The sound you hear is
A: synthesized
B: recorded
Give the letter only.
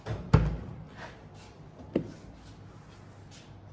B